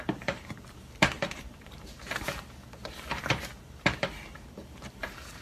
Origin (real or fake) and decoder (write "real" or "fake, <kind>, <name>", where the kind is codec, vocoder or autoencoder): fake, vocoder, BigVGAN v2